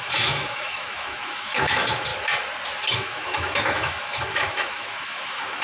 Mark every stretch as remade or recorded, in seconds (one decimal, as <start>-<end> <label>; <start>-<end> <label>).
0.0-2.1 remade; 2.1-2.9 recorded; 2.9-5.6 remade